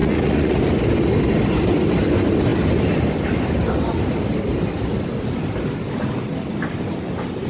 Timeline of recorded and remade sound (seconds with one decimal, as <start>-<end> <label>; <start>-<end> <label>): 0.0-0.6 remade; 0.6-7.5 recorded